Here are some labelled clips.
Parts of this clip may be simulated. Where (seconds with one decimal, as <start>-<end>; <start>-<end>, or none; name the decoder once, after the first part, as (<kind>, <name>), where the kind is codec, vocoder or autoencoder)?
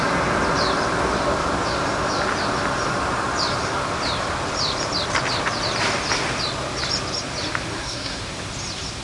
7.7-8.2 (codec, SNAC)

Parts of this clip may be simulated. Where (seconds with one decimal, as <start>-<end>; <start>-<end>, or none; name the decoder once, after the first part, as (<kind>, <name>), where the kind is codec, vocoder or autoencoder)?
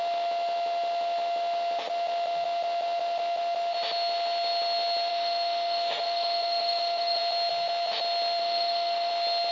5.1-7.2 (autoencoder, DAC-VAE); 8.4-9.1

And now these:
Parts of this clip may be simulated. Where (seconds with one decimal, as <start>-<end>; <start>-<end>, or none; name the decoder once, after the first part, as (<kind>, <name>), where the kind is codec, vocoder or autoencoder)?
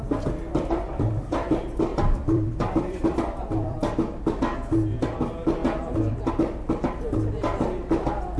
0.5-1.1 (vocoder, BigVGAN v2); 1.9-4.2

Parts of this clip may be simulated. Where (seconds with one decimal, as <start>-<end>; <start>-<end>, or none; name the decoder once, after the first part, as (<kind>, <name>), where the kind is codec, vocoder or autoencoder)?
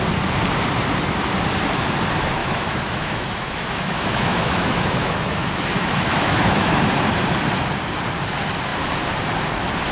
2.4-6.8 (autoencoder, DAC-VAE)